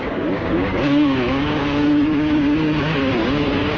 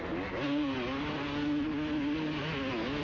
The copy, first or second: first